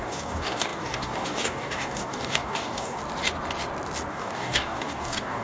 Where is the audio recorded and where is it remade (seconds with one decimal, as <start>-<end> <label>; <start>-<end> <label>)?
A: 0.0-3.0 remade; 3.0-4.1 recorded; 4.1-5.4 remade